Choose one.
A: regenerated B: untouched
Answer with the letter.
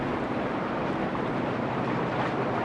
A